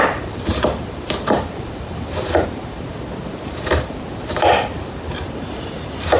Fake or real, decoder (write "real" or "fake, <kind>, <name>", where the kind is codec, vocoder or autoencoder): fake, vocoder, BigVGAN v2